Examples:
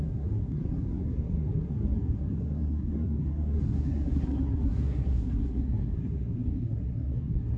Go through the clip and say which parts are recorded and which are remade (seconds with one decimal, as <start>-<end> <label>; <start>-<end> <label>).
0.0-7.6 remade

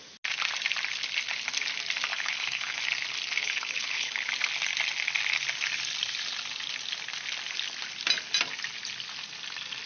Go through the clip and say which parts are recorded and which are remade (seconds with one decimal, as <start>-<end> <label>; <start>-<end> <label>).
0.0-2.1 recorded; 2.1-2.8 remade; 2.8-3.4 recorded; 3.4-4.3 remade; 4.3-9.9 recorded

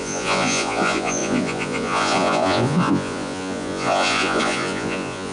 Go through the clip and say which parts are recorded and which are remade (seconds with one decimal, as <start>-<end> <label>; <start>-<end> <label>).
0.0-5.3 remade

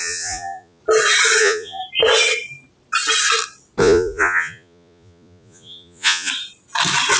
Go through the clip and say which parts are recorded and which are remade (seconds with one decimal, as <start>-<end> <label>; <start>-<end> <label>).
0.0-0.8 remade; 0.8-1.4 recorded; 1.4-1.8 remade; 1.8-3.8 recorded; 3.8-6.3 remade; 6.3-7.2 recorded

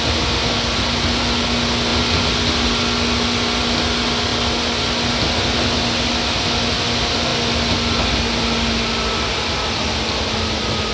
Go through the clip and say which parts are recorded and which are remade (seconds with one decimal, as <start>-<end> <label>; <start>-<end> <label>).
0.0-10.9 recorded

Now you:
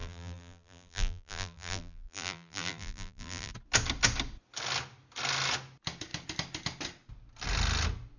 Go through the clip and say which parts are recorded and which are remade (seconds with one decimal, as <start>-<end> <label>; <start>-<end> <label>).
0.0-3.5 remade; 3.5-8.2 recorded

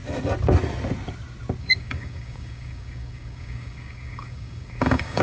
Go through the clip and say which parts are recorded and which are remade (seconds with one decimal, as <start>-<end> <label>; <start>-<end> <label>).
0.0-1.6 recorded; 1.6-5.2 remade